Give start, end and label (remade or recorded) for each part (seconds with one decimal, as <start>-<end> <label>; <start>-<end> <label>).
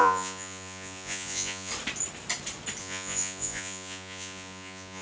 0.0-1.7 remade; 1.7-2.8 recorded; 2.8-5.0 remade